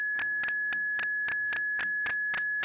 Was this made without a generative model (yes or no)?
yes